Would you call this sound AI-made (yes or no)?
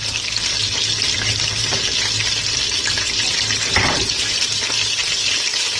no